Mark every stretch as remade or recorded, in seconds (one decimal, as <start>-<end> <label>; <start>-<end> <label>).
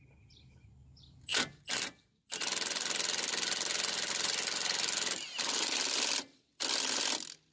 0.0-7.5 recorded